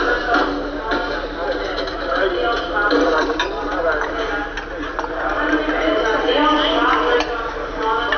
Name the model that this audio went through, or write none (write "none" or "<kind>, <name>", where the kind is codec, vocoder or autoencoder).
none